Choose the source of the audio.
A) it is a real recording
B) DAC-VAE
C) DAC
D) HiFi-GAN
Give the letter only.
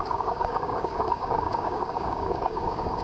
C